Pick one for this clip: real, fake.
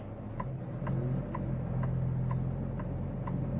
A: real